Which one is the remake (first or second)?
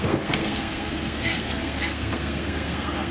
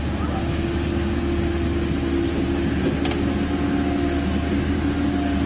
first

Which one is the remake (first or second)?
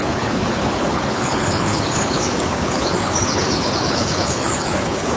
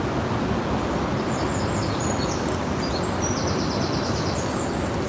first